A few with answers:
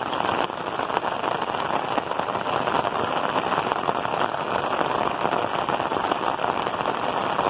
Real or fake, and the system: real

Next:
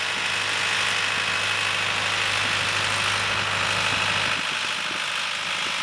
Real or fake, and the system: real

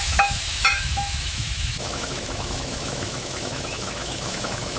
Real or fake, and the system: fake, autoencoder, DAC-VAE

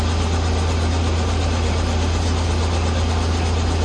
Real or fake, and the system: real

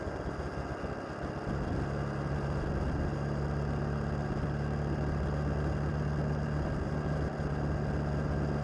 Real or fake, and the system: real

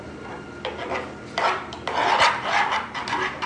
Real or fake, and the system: real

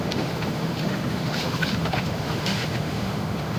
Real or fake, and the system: fake, autoencoder, DAC-VAE